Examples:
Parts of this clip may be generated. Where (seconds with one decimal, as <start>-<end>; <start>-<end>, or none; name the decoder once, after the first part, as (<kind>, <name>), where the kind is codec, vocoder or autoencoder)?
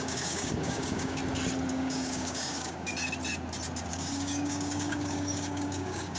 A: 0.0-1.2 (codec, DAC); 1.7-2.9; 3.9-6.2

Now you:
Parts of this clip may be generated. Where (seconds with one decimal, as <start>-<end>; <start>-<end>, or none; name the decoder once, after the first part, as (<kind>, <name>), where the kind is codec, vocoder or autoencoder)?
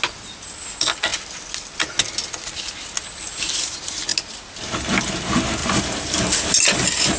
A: 5.6-7.2 (vocoder, BigVGAN v2)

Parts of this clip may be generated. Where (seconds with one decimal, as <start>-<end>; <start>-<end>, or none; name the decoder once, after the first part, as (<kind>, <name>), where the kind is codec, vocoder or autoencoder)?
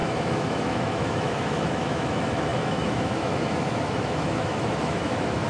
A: 0.0-5.5 (autoencoder, DAC-VAE)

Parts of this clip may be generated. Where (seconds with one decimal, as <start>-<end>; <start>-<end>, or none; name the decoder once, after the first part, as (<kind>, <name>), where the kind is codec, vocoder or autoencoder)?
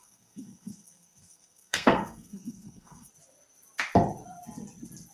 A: 0.0-3.1 (codec, SNAC)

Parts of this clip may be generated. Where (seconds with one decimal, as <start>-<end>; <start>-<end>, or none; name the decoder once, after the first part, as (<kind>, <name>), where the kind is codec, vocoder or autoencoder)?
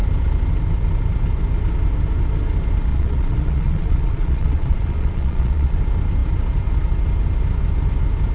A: 2.9-5.8 (vocoder, Vocos)